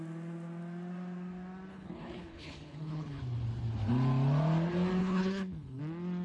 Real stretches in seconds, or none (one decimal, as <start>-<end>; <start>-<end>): 0.0-1.7; 3.2-5.0; 5.8-6.2